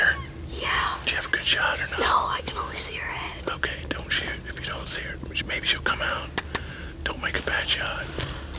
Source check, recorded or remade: recorded